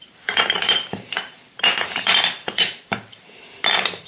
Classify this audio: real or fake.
fake